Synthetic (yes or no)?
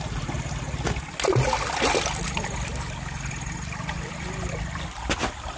no